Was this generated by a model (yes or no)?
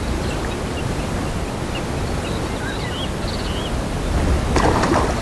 no